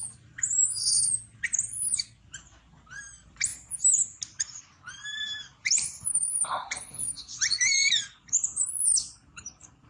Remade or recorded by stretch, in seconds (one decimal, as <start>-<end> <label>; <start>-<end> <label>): 0.0-3.0 recorded; 3.0-3.5 remade; 3.5-4.9 recorded; 4.9-9.9 remade